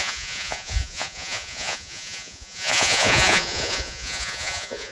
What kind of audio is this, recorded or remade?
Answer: remade